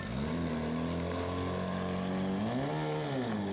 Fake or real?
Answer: real